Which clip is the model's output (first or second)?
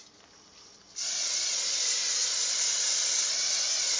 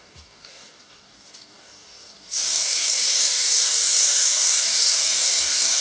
second